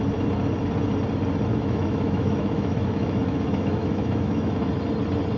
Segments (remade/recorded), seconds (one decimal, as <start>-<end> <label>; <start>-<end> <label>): 0.0-1.5 recorded; 1.5-4.7 remade; 4.7-5.4 recorded